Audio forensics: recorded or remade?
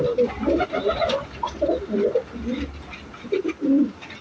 recorded